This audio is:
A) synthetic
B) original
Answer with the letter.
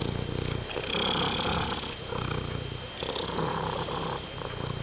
B